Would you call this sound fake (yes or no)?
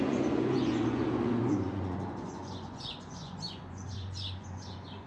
yes